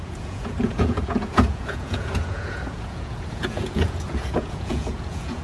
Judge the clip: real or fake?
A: fake